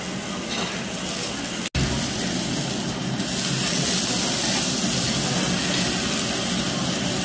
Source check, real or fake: real